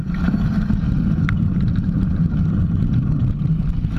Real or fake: real